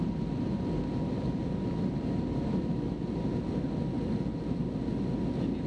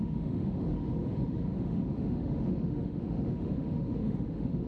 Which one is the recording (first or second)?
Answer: first